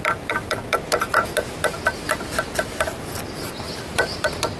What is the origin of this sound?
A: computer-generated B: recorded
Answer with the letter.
B